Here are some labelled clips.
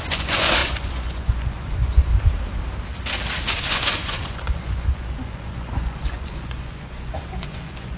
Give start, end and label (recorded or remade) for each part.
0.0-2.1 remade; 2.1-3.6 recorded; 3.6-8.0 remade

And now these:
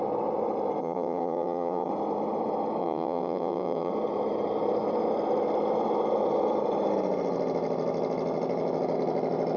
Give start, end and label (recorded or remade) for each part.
0.0-0.8 recorded; 0.8-1.9 remade; 1.9-2.8 recorded; 2.8-3.9 remade; 3.9-9.6 recorded